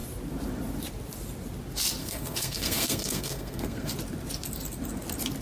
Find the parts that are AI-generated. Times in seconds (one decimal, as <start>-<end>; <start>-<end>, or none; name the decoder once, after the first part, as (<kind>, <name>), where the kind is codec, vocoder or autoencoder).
2.0-3.9 (codec, SNAC)